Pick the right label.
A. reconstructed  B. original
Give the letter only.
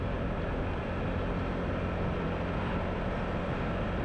B